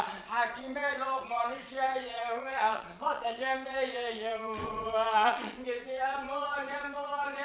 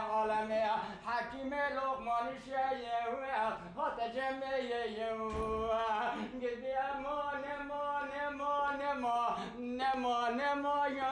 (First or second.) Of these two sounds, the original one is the second